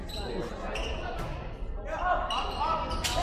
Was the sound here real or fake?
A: real